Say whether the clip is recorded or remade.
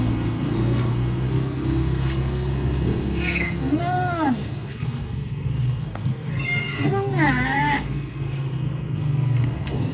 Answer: remade